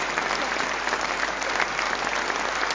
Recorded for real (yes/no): yes